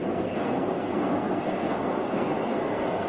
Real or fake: fake